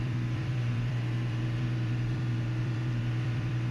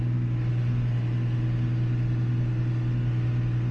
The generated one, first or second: first